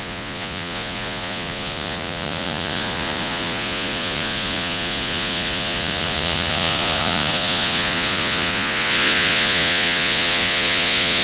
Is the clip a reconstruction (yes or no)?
yes